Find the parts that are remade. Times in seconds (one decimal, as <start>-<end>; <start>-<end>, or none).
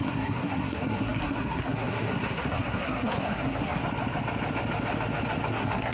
0.0-3.8; 5.5-5.9